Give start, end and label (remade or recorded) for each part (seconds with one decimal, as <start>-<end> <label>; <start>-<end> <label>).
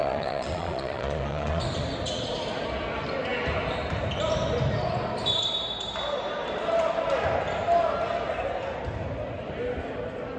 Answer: 0.0-1.6 remade; 1.6-10.4 recorded